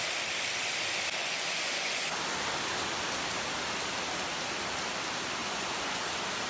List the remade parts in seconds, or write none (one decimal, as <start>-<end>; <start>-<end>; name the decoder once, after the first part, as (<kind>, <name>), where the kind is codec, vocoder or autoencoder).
1.2-2.1 (vocoder, Vocos); 5.4-6.0